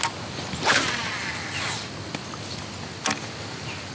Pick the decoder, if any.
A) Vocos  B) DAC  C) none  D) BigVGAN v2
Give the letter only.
C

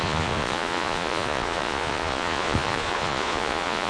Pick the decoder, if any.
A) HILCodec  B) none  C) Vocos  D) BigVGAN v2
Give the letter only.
C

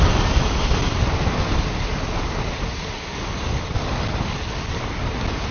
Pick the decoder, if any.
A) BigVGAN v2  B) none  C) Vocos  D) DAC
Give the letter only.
B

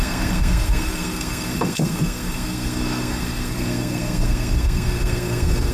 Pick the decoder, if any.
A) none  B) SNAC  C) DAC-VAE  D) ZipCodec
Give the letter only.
B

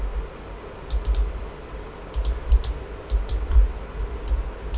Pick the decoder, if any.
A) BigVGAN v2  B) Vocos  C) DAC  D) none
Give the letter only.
D